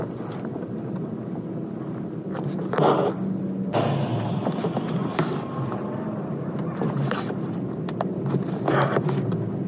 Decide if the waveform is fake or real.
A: real